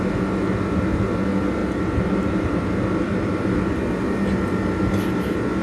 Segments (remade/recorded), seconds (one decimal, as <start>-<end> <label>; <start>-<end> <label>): 0.0-1.6 recorded; 1.6-5.0 remade; 5.0-5.6 recorded